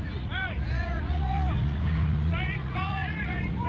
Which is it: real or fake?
fake